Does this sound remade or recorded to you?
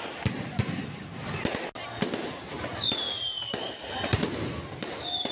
recorded